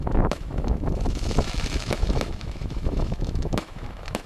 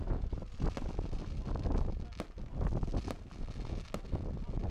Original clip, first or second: second